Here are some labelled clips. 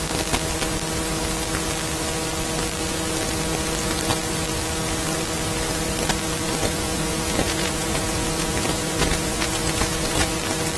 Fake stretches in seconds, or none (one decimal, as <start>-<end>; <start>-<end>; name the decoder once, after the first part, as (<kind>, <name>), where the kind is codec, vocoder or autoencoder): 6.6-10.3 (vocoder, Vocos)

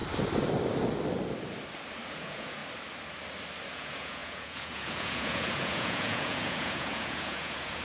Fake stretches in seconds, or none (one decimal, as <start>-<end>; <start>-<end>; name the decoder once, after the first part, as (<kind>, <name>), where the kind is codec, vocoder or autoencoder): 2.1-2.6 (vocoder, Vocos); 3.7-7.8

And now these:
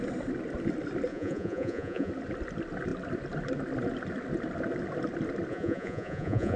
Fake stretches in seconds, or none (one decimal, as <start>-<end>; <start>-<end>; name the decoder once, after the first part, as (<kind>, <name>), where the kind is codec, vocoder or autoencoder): 1.1-2.1 (vocoder, Vocos); 5.5-6.6